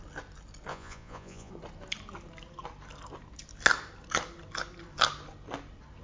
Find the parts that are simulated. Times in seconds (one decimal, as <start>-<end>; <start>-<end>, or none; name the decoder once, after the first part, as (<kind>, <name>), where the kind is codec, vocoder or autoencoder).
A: 0.7-1.5 (vocoder, Vocos)

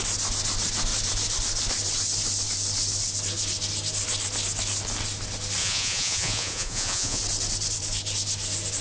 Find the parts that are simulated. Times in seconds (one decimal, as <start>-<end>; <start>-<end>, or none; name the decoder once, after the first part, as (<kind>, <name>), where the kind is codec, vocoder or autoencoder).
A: 5.6-7.2 (vocoder, Vocos)